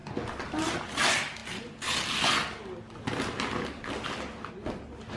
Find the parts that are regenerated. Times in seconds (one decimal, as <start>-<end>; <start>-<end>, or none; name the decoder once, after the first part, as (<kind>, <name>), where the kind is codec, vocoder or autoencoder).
none